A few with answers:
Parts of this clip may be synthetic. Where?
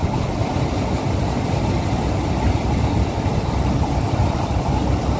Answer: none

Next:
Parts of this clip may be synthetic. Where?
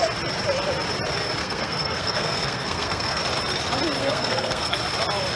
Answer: 1.4-3.2 (codec, SNAC); 4.0-4.8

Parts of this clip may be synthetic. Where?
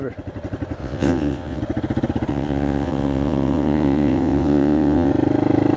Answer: 0.8-1.6 (vocoder, WaveNeXt); 2.3-5.1